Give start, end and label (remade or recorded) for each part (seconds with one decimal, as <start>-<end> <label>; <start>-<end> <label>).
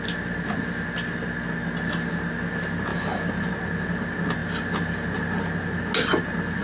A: 0.0-6.6 recorded